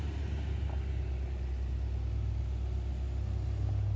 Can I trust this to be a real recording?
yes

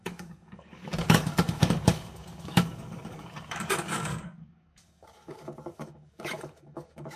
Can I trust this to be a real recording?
no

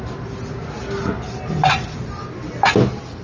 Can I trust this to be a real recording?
yes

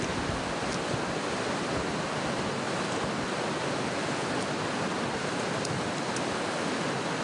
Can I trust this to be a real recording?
yes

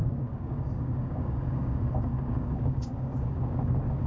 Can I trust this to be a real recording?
no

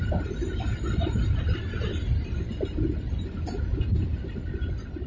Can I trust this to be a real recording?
yes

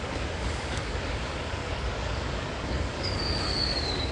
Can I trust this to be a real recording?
no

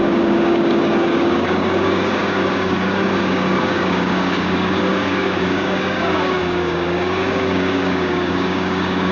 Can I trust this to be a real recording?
no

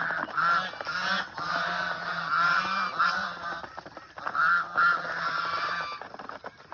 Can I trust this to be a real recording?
yes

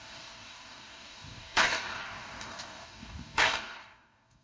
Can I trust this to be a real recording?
no